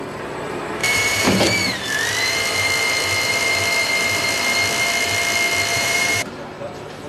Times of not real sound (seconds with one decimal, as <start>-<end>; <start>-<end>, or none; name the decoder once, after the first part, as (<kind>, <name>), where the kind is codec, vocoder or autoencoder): 0.8-1.5 (vocoder, BigVGAN v2); 5.7-6.3